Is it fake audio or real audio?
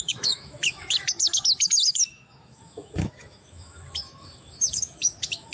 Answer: fake